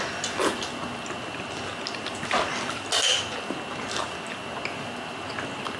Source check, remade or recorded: recorded